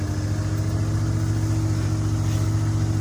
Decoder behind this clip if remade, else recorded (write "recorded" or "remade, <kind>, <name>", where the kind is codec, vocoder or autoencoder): recorded